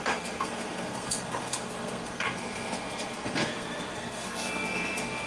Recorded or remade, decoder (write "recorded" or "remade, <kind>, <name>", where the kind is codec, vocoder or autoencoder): remade, codec, SNAC